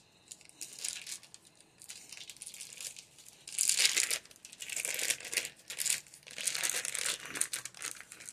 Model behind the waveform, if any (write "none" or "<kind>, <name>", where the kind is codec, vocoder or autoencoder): none